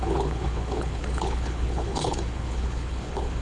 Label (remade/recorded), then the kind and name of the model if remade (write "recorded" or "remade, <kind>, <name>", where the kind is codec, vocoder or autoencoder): remade, codec, HILCodec